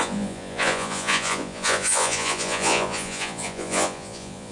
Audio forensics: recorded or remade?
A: remade